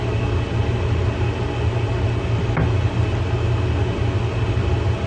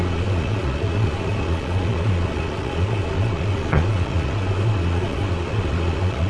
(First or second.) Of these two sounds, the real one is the first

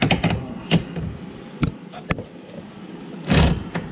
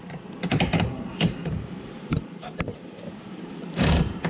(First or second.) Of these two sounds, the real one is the first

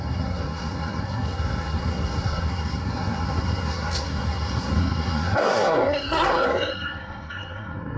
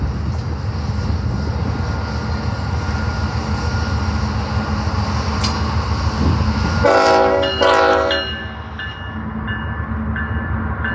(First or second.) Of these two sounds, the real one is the second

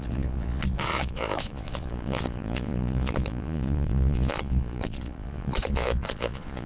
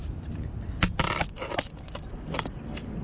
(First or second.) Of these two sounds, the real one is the second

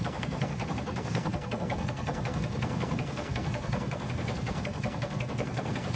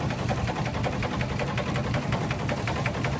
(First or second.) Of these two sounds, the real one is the second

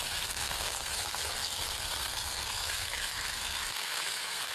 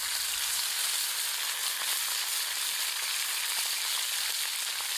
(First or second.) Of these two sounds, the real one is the second